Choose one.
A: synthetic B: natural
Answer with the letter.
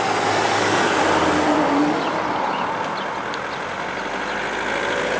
B